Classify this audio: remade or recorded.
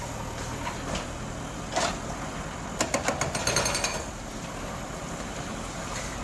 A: recorded